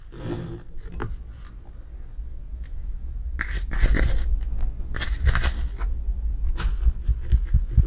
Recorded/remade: recorded